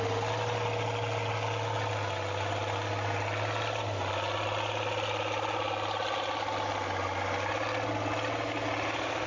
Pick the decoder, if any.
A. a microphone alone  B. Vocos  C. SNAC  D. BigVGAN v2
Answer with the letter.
A